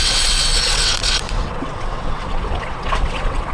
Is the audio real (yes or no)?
no